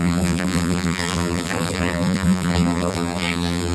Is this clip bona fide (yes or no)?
no